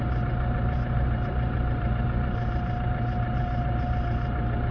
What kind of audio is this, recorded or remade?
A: remade